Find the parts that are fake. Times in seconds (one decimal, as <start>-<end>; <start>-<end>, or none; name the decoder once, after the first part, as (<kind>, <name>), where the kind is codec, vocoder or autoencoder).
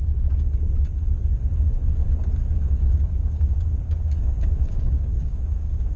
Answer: 2.5-6.0 (codec, DAC)